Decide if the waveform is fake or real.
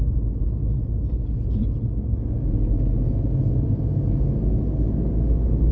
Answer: real